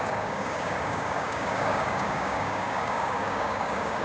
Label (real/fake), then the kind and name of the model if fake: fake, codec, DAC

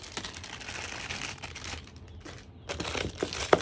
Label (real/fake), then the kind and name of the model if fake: real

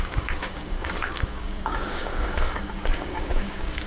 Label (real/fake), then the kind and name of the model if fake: fake, codec, DAC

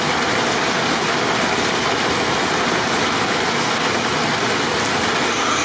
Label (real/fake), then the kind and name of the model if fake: real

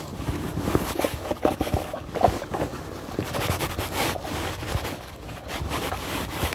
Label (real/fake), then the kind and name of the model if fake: fake, codec, DAC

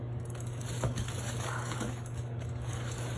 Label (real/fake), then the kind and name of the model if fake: fake, codec, DAC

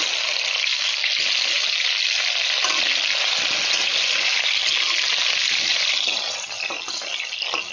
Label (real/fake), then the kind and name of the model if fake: real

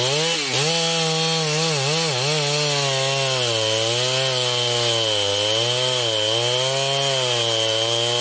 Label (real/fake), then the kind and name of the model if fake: real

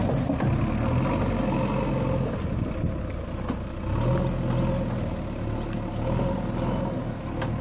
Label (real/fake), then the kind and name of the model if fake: real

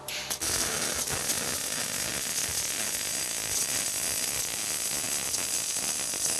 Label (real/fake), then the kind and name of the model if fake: real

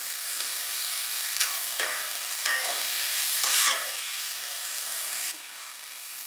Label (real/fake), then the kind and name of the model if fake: fake, codec, DAC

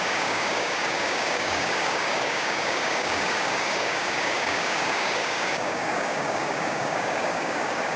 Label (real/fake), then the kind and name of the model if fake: fake, codec, DAC